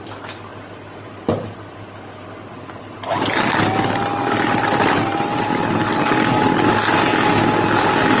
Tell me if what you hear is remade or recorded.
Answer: recorded